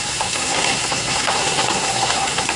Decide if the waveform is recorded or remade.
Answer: remade